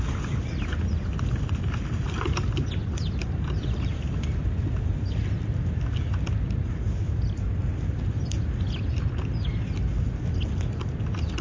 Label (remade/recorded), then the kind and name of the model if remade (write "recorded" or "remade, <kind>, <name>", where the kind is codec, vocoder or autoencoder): recorded